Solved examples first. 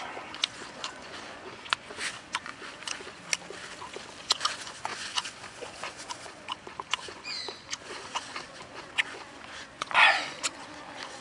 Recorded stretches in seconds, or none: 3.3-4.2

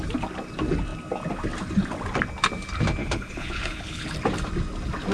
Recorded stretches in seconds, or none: 0.0-3.0; 4.1-5.1

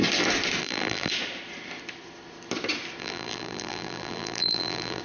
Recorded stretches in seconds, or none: 0.0-0.6; 1.1-3.0

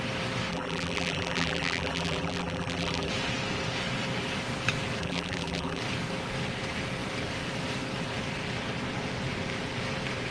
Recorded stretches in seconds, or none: 0.0-0.5; 3.1-5.0; 5.8-10.3

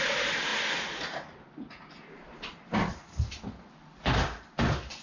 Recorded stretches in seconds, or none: 0.0-5.0

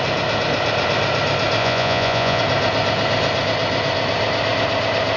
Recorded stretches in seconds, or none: 0.0-1.6; 2.4-5.2